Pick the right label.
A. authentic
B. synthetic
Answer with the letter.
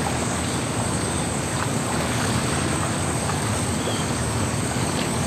B